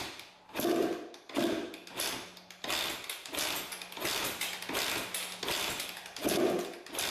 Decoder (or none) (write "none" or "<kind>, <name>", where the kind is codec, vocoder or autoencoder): none